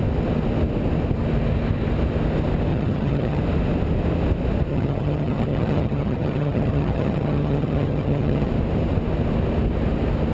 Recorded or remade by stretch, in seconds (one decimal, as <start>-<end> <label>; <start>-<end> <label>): 0.0-2.7 recorded; 2.7-3.4 remade; 3.4-4.7 recorded; 4.7-8.5 remade; 8.5-10.3 recorded